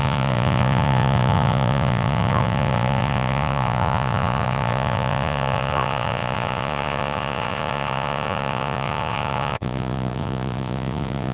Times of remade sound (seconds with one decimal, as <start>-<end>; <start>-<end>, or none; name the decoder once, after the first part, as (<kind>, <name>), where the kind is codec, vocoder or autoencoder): 0.0-11.3 (vocoder, Vocos)